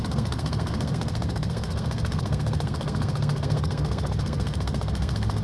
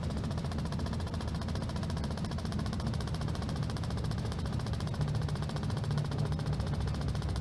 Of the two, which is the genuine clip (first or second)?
second